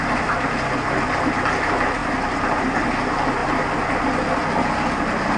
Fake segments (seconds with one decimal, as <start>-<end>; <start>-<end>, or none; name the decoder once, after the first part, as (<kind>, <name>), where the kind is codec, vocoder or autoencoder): none